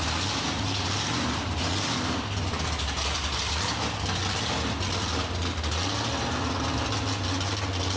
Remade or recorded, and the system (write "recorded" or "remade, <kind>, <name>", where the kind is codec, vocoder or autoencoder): recorded